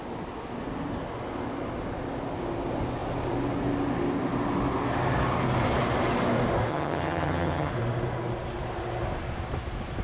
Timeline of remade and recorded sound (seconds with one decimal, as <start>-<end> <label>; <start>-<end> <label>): 0.0-6.7 recorded; 6.7-7.7 remade; 7.7-10.0 recorded